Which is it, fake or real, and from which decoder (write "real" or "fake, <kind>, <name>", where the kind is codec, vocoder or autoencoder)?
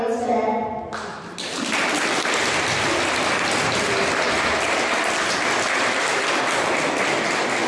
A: real